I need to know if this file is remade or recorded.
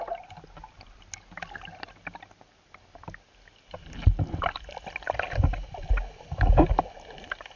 recorded